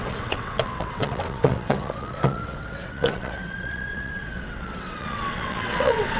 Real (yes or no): no